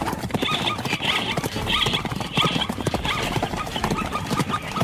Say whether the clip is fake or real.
real